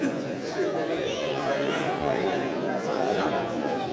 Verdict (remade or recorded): remade